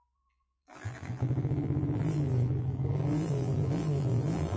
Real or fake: fake